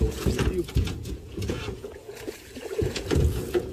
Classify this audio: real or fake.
fake